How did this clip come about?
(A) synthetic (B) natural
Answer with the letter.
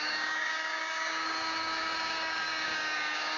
A